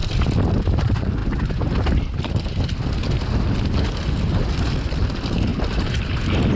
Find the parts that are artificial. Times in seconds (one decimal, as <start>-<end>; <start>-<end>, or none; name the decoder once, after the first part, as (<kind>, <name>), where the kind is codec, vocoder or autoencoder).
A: 0.0-0.6 (vocoder, BigVGAN v2); 5.5-6.6